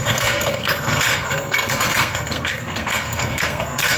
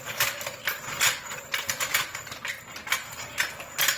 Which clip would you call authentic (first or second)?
second